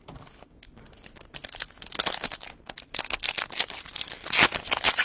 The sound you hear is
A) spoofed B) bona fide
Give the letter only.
B